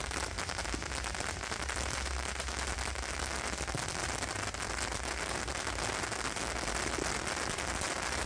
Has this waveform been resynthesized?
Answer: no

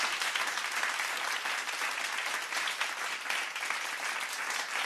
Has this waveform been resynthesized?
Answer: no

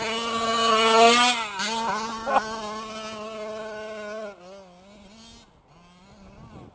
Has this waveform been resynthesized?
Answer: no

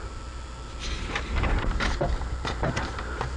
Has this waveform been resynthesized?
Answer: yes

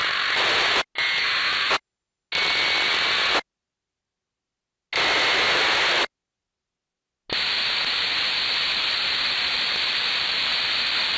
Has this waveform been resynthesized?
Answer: no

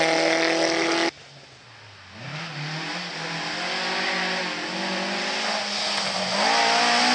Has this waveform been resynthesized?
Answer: no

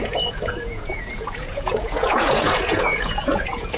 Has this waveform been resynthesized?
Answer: yes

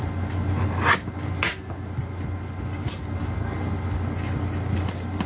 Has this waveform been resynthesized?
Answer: no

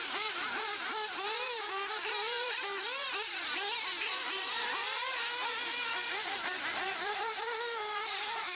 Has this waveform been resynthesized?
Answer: yes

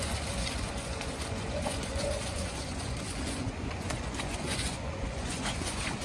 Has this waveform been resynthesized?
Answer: yes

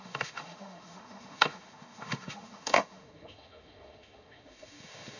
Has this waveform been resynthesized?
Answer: yes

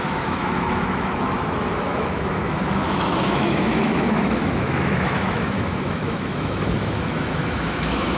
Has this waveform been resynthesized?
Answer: yes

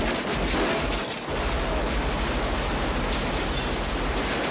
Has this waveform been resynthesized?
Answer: no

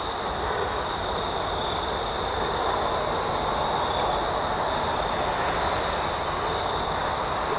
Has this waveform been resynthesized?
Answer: no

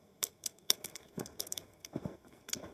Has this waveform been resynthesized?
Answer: yes